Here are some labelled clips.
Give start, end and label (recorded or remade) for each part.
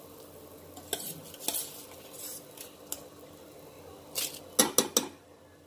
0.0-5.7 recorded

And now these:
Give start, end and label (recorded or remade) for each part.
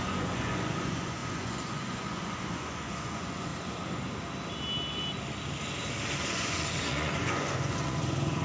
0.0-3.5 remade; 3.5-6.3 recorded; 6.3-8.4 remade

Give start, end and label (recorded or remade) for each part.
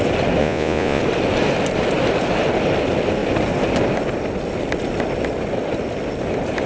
0.0-0.4 recorded; 0.4-1.0 remade; 1.0-6.7 recorded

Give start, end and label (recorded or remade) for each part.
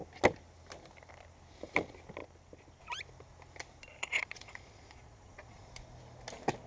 0.0-4.0 recorded; 4.0-5.7 remade; 5.7-6.7 recorded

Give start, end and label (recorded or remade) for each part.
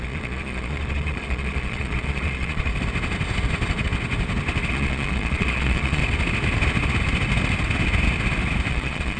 0.0-2.7 remade; 2.7-4.7 recorded; 4.7-6.0 remade; 6.0-8.7 recorded; 8.7-9.2 remade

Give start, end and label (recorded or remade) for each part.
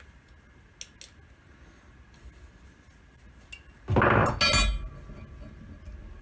0.0-6.2 recorded